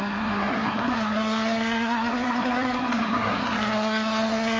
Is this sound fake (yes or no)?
yes